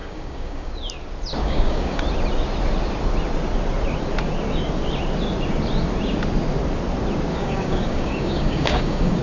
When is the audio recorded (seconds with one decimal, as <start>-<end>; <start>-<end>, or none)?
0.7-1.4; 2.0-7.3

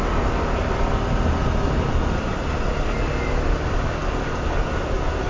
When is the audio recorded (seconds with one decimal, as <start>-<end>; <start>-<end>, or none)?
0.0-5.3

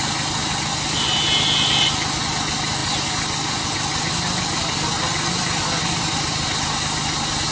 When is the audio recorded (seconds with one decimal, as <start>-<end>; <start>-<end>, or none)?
0.0-7.5

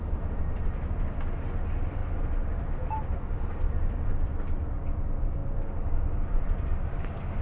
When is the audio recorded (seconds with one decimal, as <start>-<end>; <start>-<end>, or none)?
0.0-7.4

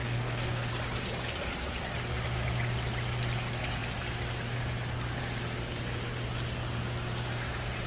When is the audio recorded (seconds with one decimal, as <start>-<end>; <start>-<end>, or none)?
0.7-7.9

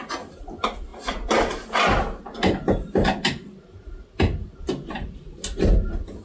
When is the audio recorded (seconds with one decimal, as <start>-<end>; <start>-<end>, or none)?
0.0-6.2